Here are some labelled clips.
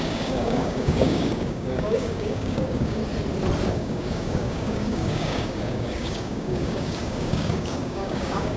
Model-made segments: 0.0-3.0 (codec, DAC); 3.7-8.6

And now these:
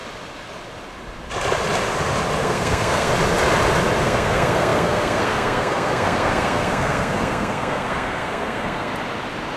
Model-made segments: 2.4-3.1 (codec, SNAC); 4.0-8.9

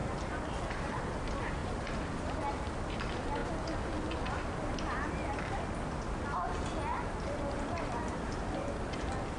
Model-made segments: 0.0-1.0 (vocoder, BigVGAN v2); 1.6-2.5; 6.9-8.7

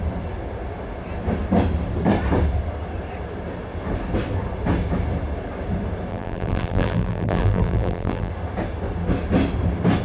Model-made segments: 6.1-8.3 (vocoder, BigVGAN v2)

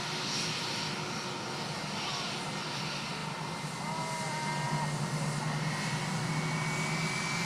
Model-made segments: none